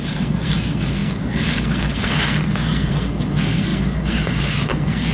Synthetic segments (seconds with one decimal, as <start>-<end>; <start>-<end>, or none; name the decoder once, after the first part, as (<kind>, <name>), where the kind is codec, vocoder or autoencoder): 0.0-5.1 (codec, SNAC)